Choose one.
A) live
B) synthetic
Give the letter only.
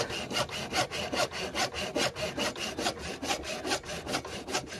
A